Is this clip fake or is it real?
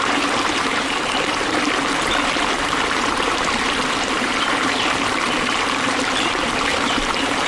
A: fake